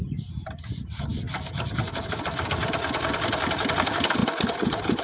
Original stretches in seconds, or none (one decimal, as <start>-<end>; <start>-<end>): 0.0-5.0